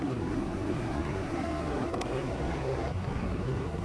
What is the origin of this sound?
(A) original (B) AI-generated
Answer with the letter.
B